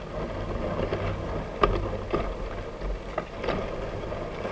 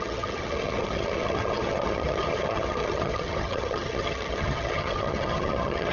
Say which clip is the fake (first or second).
second